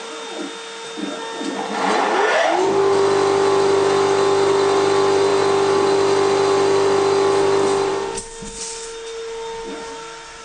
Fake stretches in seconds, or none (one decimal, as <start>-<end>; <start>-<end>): none